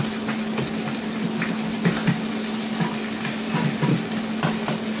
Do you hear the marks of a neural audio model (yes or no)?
no